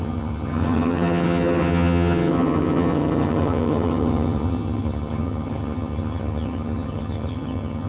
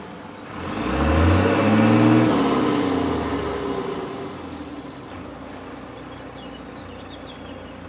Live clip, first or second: second